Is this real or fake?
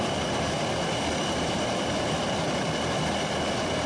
fake